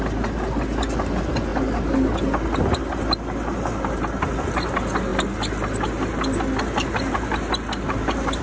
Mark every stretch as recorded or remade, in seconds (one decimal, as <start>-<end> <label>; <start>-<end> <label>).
0.0-8.4 recorded